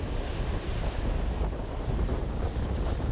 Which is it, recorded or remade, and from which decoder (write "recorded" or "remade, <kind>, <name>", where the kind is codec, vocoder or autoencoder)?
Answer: recorded